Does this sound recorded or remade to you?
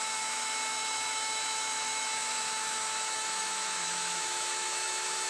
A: remade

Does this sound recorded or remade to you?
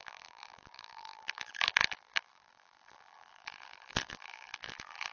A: remade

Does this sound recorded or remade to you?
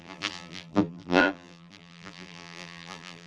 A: remade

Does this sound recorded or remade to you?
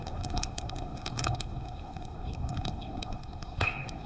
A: remade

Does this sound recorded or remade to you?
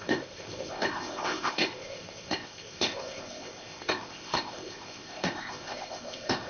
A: remade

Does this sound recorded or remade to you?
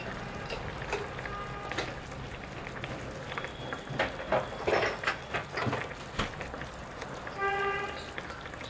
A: recorded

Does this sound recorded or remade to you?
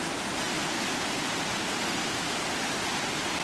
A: remade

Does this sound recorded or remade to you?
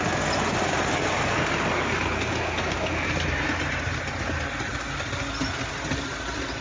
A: recorded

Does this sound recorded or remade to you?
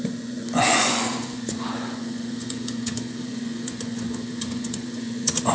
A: remade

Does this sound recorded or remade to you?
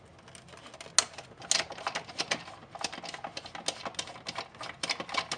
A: recorded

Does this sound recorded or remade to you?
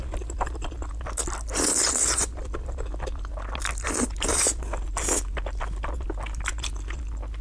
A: recorded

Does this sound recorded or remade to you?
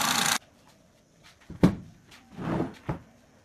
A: recorded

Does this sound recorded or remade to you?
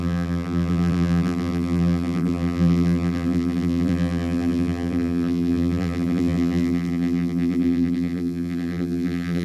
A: remade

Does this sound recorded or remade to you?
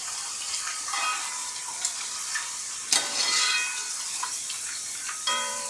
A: remade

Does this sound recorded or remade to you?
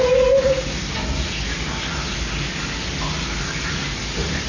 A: recorded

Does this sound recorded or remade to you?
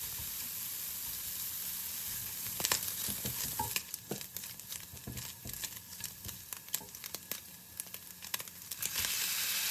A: recorded